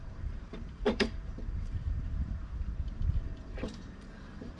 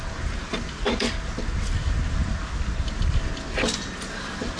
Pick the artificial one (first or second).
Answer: first